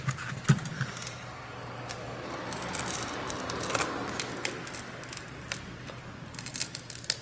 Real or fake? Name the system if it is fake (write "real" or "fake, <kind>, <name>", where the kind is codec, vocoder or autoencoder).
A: real